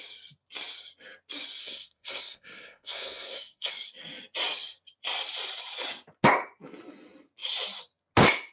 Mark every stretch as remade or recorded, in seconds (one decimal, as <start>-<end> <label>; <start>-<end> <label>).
0.0-1.6 recorded; 1.6-3.7 remade; 3.7-8.5 recorded